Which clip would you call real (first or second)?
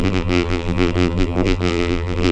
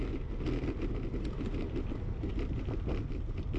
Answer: second